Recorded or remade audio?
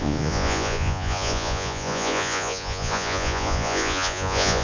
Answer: remade